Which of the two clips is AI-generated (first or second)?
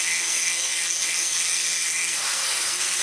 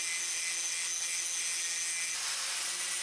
first